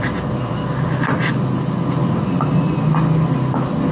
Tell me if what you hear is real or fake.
real